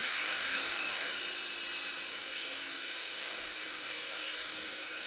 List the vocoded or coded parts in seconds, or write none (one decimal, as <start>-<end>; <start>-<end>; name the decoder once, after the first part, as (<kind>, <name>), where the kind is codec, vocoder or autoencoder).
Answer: 0.0-1.2 (codec, DAC); 2.1-5.1